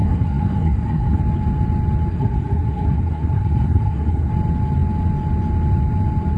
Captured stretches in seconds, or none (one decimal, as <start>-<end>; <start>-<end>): 1.2-2.1; 4.3-6.4